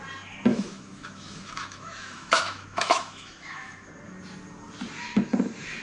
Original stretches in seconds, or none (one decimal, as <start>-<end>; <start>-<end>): 0.0-0.5; 3.9-5.8

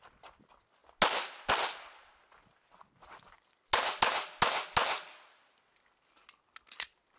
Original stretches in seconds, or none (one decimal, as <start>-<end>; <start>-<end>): 0.0-7.2